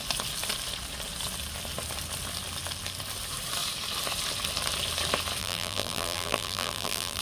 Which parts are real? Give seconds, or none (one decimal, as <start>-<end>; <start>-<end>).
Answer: 0.0-5.4